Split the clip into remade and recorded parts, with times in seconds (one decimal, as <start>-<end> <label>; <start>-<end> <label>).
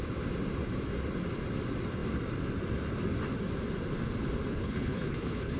0.0-4.5 recorded; 4.5-5.6 remade